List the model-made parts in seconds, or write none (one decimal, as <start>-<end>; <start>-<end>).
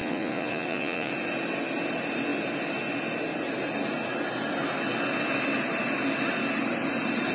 0.0-1.1